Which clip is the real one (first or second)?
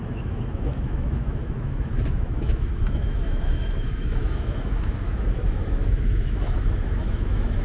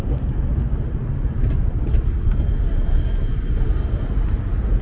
second